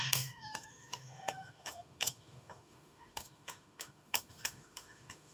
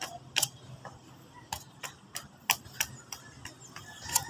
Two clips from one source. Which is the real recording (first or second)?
second